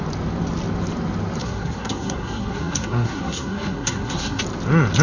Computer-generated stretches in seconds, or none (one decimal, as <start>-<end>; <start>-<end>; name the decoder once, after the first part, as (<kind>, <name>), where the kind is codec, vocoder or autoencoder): 1.4-4.4 (codec, SNAC)